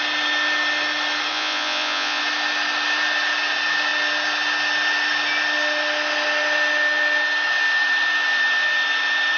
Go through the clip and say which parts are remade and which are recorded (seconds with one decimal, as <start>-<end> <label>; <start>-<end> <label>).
0.0-1.3 recorded; 1.3-2.2 remade; 2.2-9.4 recorded